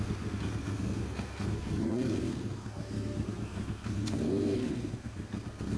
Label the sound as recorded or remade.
remade